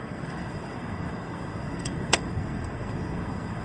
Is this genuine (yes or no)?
no